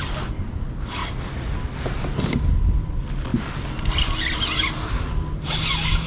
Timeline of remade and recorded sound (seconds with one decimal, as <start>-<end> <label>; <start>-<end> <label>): 0.0-6.1 recorded